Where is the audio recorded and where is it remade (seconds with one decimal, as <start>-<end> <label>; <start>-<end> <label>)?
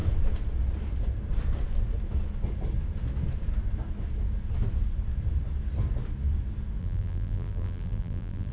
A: 0.0-6.8 recorded; 6.8-8.5 remade